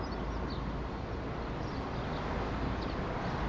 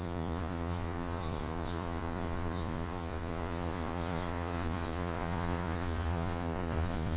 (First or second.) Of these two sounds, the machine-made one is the second